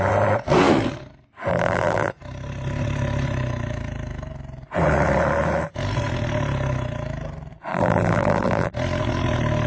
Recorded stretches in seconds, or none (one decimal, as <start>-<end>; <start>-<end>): 0.0-1.5; 2.1-7.7; 8.7-9.7